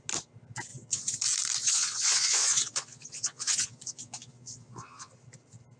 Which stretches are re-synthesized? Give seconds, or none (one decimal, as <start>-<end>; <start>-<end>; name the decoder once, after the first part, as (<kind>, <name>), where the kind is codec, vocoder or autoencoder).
0.7-1.2 (vocoder, Vocos); 1.6-5.1